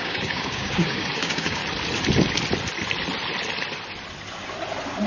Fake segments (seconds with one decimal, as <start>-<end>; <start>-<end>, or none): 0.0-1.6